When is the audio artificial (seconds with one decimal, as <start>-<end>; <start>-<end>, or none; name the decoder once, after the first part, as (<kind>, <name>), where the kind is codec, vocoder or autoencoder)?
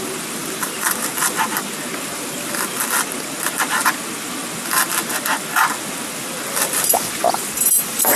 none